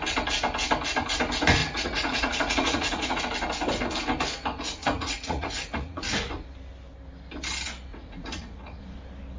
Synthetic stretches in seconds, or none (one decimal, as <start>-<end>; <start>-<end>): 1.6-3.2; 4.8-6.0; 7.9-8.8